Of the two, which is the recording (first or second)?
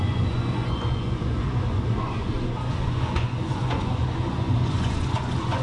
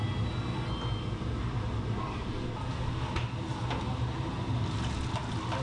second